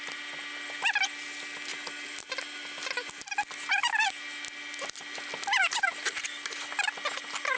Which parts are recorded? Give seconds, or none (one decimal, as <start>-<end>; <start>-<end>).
0.0-7.6